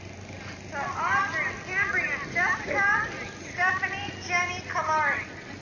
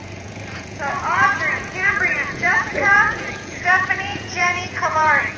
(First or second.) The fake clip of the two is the second